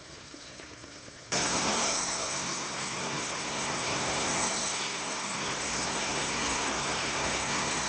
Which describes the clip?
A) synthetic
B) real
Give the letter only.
A